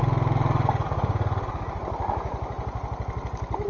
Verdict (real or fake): real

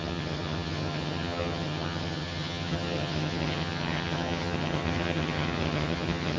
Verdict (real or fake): fake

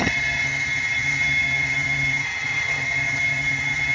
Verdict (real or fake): fake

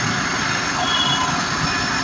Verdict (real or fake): real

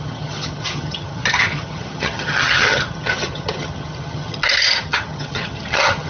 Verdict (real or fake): fake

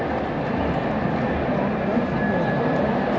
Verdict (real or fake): real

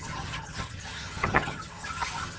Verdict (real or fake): fake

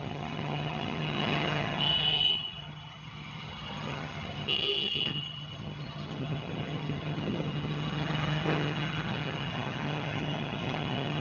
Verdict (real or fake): fake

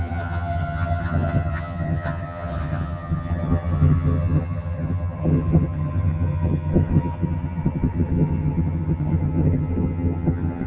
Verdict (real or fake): fake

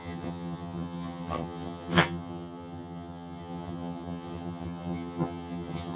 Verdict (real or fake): fake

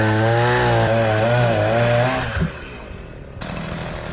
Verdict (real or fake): real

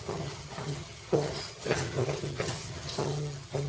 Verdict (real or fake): fake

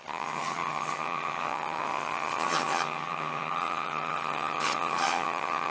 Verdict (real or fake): fake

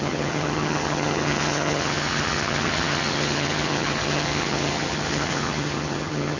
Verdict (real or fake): fake